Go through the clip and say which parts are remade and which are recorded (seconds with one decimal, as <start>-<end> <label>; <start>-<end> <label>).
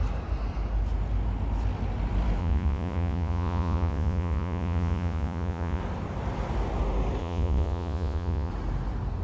0.0-2.4 recorded; 2.4-5.8 remade; 5.8-7.2 recorded; 7.2-8.5 remade; 8.5-9.2 recorded